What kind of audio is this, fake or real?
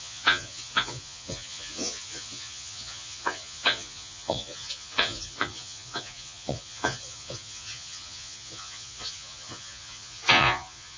fake